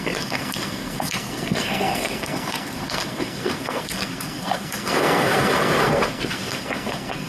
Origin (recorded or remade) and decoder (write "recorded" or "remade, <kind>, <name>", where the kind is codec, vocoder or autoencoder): remade, codec, SNAC